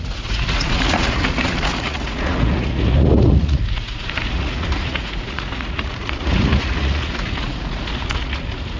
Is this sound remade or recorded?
remade